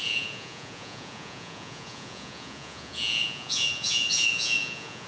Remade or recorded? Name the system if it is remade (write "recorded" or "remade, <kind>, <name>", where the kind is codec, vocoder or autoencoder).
remade, vocoder, Vocos